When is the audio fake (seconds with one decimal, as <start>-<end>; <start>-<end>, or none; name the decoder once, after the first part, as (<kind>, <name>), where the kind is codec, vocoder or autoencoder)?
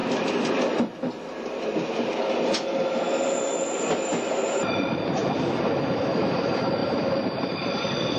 4.5-5.2 (vocoder, BigVGAN v2); 5.8-8.2